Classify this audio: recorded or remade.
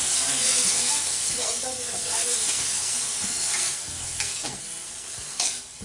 remade